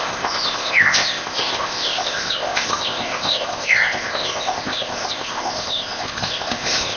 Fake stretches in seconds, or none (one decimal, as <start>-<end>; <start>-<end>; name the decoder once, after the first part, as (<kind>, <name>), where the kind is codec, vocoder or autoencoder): 0.0-7.0 (codec, ZipCodec)